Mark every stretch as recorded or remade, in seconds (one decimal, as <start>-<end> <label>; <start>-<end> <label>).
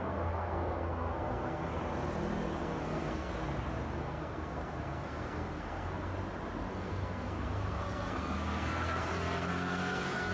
0.0-1.8 remade; 1.8-2.6 recorded; 2.6-3.3 remade; 3.3-4.0 recorded; 4.0-6.1 remade; 6.1-6.7 recorded; 6.7-10.3 remade